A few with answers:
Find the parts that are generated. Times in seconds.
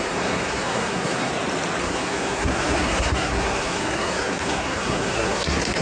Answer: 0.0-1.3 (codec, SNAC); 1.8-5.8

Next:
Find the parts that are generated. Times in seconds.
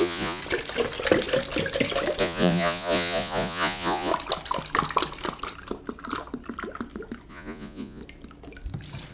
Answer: 0.0-0.4 (vocoder, Vocos); 2.2-4.1; 7.3-8.0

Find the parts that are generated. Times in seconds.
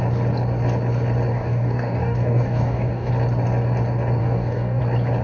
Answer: 1.3-3.1 (codec, DAC); 4.2-4.8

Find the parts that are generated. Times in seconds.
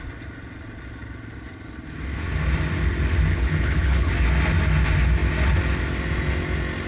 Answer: 3.3-4.1 (codec, HILCodec)